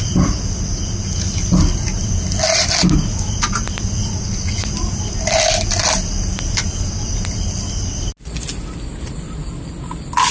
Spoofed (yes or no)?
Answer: no